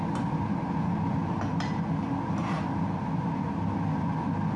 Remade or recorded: recorded